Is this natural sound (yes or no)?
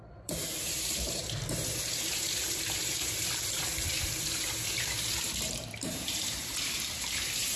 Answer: no